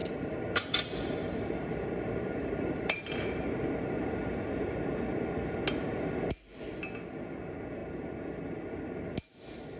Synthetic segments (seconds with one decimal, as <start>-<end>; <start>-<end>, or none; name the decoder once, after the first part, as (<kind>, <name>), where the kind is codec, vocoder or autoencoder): 0.0-3.4 (vocoder, BigVGAN v2)